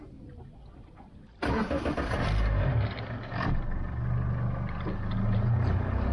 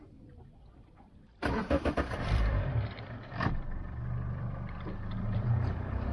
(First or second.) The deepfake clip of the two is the second